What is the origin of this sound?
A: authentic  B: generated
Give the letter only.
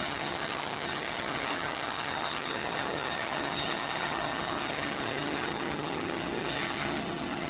B